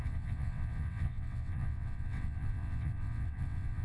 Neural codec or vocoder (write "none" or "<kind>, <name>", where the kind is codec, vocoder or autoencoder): vocoder, WaveNeXt